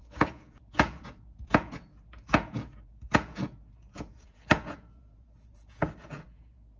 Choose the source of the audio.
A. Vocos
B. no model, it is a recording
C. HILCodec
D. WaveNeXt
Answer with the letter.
A